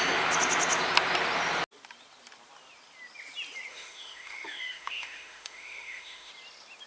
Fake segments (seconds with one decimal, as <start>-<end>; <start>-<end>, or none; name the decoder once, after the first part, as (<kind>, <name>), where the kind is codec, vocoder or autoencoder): 3.7-6.3 (autoencoder, DAC-VAE)